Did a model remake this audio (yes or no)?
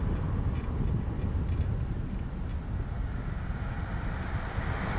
no